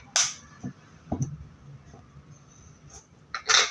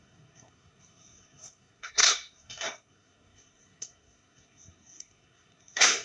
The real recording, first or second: first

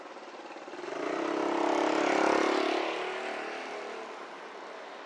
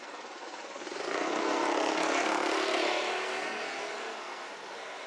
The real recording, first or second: first